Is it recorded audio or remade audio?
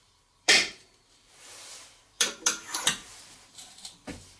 remade